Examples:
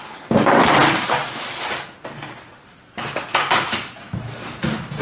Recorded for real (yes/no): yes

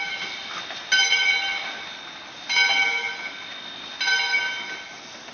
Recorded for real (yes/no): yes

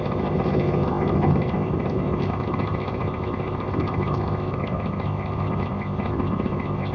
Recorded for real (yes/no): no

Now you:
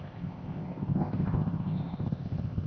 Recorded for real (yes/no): no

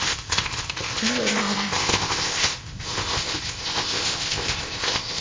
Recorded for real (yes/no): no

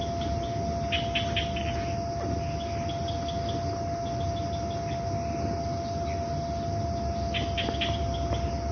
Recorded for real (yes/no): yes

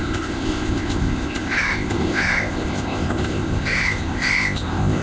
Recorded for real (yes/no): no